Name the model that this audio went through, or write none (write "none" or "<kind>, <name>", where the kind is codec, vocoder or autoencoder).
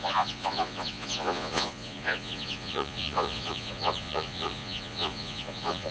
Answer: vocoder, Vocos